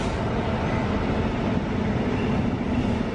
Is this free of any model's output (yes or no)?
yes